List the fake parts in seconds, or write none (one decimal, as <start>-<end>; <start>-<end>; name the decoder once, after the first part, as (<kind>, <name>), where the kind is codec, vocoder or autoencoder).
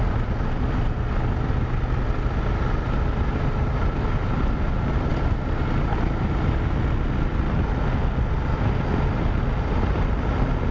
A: none